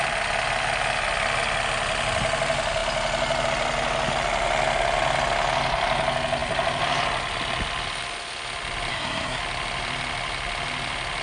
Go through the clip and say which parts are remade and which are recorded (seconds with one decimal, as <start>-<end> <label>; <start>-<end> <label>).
0.0-8.9 recorded; 8.9-9.4 remade; 9.4-11.2 recorded